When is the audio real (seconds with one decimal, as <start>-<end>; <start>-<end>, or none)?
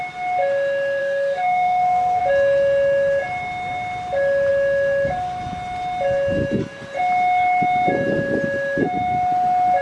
0.0-1.0; 2.2-9.8